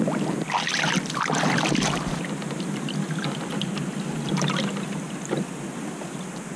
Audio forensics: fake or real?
real